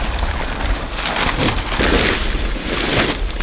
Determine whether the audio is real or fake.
real